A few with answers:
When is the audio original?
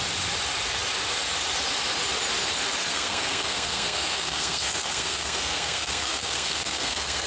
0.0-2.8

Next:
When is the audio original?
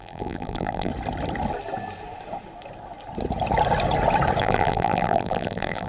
0.9-4.4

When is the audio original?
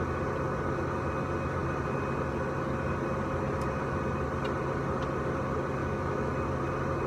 0.0-5.8; 6.3-7.1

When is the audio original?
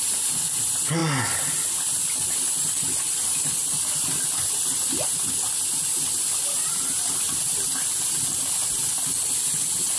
0.0-10.0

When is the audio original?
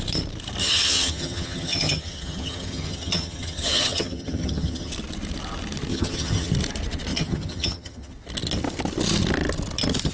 0.0-0.6; 4.9-5.9; 6.5-7.1; 8.1-10.1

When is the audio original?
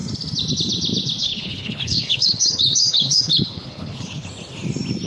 0.0-1.2; 4.3-5.1